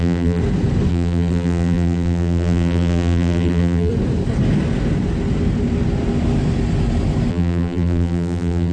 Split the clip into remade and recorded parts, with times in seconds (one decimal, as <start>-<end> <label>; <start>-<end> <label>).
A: 0.0-0.4 remade; 0.4-0.9 recorded; 0.9-3.9 remade; 3.9-7.3 recorded; 7.3-8.7 remade